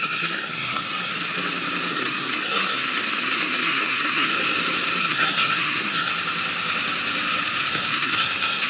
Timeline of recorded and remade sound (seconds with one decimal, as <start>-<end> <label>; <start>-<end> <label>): 0.0-1.1 remade; 1.1-1.9 recorded; 1.9-4.3 remade; 4.3-5.0 recorded; 5.0-6.1 remade; 6.1-7.7 recorded; 7.7-8.7 remade